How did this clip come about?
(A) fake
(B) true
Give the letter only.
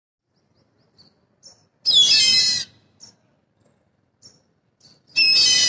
B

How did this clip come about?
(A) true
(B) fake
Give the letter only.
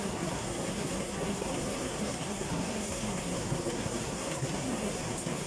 B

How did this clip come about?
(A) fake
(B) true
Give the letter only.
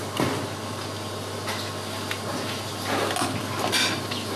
B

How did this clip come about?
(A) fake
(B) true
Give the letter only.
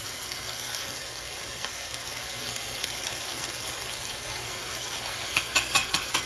A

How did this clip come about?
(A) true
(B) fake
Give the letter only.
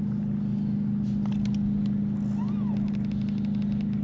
A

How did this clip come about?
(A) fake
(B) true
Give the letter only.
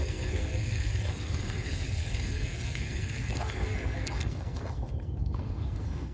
A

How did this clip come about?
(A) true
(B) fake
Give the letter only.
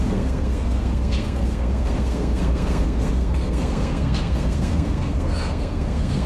B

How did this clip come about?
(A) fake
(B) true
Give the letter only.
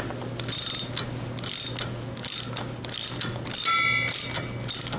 B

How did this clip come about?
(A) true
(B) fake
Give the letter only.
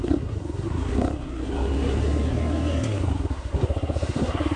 B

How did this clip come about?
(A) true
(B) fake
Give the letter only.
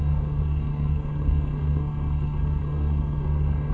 B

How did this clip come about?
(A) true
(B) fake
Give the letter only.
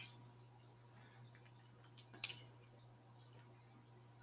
A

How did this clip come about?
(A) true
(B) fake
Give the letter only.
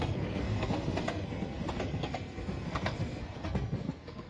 B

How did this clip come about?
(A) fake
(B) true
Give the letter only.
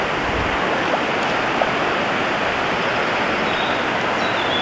B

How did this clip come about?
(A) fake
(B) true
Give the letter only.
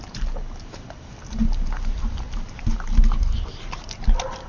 B